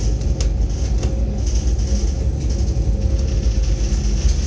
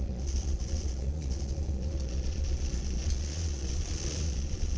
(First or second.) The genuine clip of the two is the first